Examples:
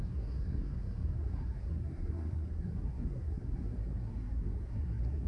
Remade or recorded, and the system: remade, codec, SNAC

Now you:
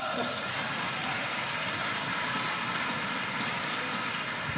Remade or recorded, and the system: recorded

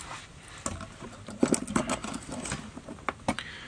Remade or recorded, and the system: recorded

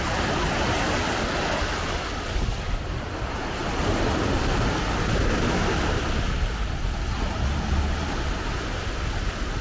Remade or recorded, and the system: recorded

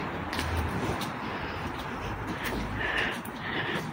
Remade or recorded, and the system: remade, vocoder, BigVGAN v2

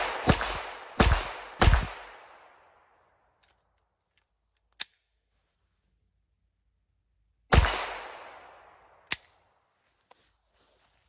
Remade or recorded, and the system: recorded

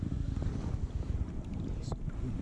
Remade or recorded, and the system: recorded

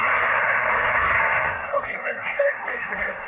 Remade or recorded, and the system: remade, codec, SNAC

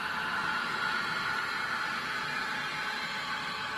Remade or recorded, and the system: recorded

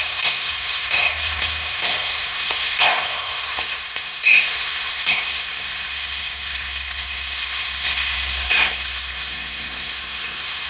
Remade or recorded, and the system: remade, codec, SNAC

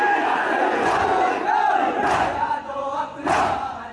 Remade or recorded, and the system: remade, vocoder, Vocos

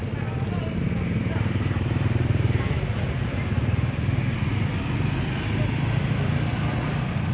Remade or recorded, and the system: recorded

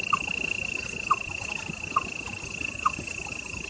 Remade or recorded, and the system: recorded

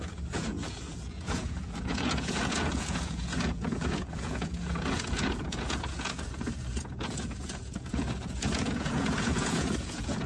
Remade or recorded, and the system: remade, vocoder, Vocos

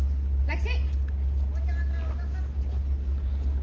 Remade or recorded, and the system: recorded